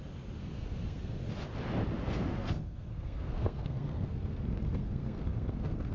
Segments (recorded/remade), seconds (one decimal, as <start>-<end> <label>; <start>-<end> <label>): 0.0-0.4 recorded; 0.4-1.2 remade; 1.2-2.3 recorded; 2.3-5.9 remade